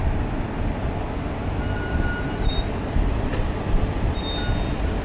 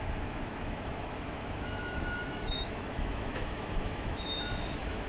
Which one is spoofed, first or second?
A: second